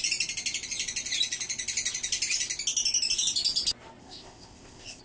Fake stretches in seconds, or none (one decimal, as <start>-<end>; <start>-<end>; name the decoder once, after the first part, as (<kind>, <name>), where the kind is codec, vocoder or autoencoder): 4.0-5.0 (codec, ZipCodec)